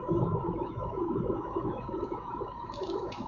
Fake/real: fake